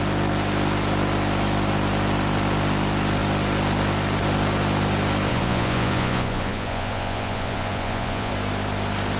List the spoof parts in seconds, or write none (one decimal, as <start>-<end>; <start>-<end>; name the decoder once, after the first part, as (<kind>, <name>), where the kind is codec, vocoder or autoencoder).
5.3-8.3 (vocoder, Vocos)